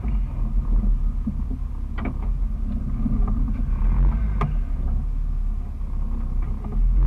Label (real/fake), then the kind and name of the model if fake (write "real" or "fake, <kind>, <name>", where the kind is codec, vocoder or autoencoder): real